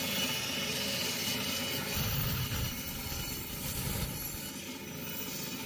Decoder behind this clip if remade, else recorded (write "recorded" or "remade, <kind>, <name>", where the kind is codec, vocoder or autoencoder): recorded